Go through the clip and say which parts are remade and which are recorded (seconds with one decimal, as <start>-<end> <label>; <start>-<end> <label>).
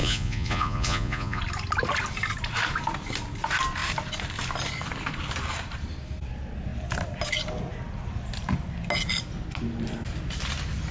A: 0.0-1.4 remade; 1.4-10.9 recorded